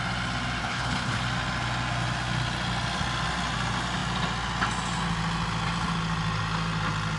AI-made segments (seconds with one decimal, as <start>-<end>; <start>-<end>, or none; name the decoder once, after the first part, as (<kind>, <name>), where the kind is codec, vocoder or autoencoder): 0.6-1.2 (codec, HILCodec)